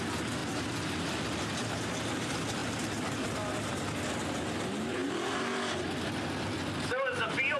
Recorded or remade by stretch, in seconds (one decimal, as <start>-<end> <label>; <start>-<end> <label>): 0.0-7.6 recorded